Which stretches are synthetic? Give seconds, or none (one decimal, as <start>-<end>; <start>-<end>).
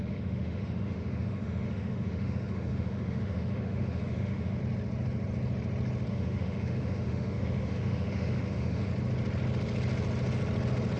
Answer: 0.0-4.6; 6.1-8.9